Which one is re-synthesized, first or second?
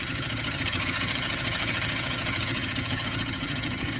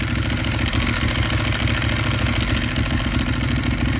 first